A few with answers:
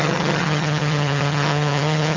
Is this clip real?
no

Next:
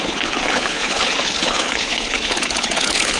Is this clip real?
no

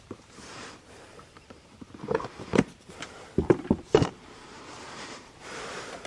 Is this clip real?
no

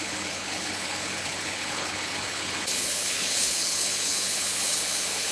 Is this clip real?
no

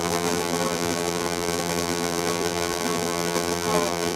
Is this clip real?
no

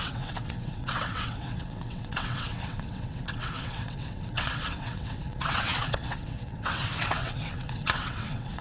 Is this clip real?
no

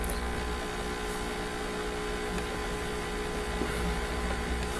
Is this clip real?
yes